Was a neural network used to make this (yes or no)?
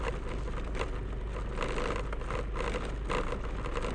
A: no